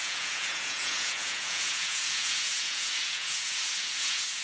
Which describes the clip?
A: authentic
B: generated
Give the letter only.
B